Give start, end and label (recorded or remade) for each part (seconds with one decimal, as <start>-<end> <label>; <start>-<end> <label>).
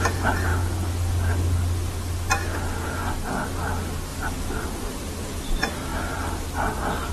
0.0-4.1 recorded; 4.1-5.5 remade; 5.5-7.1 recorded